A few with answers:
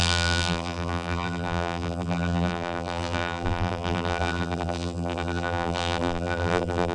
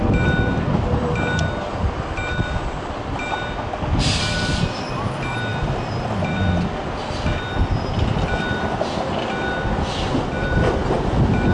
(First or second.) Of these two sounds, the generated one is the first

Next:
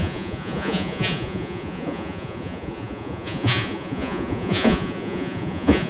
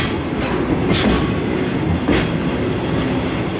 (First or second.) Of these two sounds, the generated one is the first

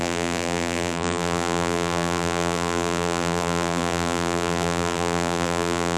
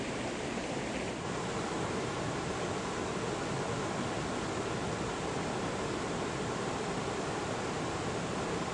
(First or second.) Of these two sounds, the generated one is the first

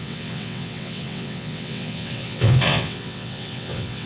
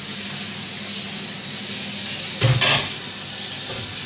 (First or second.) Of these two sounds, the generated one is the first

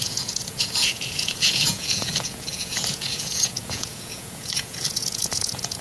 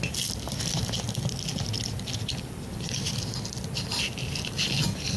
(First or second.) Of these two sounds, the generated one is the first